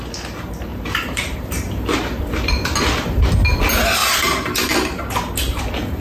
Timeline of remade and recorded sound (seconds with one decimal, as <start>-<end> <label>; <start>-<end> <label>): 0.0-0.7 recorded; 0.7-2.2 remade; 2.2-4.0 recorded; 4.0-5.6 remade; 5.6-6.0 recorded